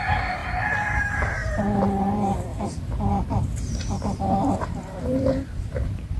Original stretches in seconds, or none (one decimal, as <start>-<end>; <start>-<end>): 0.4-1.0; 2.5-3.1